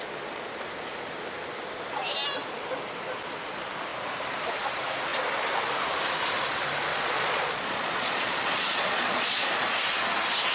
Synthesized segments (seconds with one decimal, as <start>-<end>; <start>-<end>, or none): 6.9-9.5